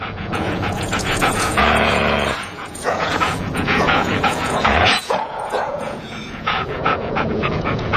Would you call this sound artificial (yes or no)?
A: yes